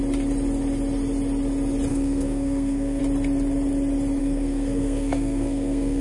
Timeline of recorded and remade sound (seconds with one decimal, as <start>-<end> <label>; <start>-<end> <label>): 0.0-1.9 recorded; 1.9-3.0 remade; 3.0-4.2 recorded; 4.2-6.0 remade